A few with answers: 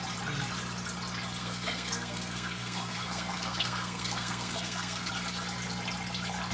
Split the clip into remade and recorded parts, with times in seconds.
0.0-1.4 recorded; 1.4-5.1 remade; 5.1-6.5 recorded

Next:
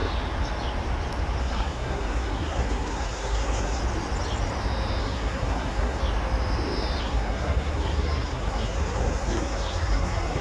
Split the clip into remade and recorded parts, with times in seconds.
0.0-1.4 recorded; 1.4-3.8 remade; 3.8-5.0 recorded; 5.0-6.0 remade; 6.0-7.0 recorded; 7.0-10.4 remade

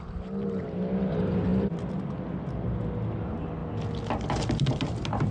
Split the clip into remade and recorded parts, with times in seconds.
0.0-5.3 recorded

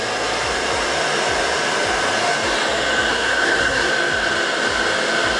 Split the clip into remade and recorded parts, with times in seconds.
0.0-3.1 recorded; 3.1-3.9 remade; 3.9-5.4 recorded

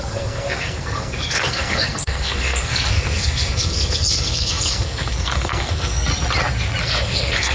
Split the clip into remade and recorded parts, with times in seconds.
0.0-6.1 remade; 6.1-6.8 recorded; 6.8-7.5 remade